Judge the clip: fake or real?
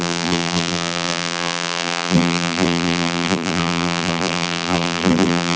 fake